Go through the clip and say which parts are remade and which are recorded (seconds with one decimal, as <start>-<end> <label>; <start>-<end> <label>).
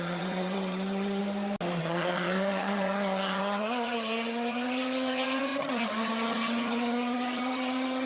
0.0-1.2 remade; 1.2-1.8 recorded; 1.8-8.1 remade